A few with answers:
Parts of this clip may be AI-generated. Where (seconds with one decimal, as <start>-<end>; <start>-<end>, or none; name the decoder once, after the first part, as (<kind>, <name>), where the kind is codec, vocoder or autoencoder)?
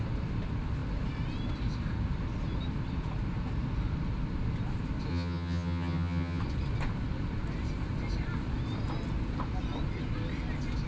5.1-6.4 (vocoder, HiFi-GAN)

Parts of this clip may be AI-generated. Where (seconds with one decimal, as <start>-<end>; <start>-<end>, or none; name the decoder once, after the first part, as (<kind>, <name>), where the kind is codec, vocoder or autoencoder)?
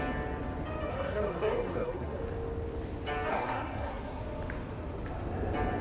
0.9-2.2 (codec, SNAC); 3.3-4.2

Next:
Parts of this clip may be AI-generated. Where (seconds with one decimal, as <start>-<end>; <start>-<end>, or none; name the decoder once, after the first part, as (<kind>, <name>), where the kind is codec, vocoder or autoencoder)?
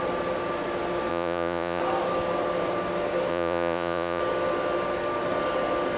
1.1-1.8 (vocoder, Vocos); 3.3-4.2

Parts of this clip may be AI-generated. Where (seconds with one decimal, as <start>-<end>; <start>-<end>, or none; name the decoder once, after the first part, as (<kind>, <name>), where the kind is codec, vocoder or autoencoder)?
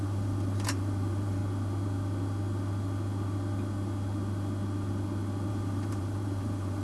0.0-1.4 (vocoder, BigVGAN v2); 5.5-6.8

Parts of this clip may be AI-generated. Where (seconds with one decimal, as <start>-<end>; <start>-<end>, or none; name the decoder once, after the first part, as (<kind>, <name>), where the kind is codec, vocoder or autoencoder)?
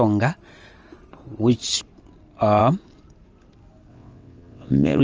3.9-5.0 (vocoder, WaveNeXt)